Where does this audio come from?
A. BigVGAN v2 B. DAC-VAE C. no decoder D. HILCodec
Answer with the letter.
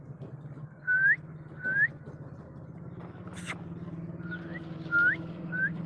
C